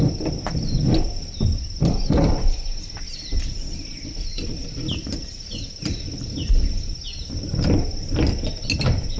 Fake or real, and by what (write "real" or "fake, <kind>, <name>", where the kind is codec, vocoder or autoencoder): real